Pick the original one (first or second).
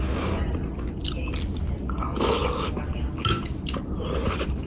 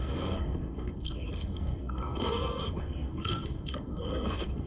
first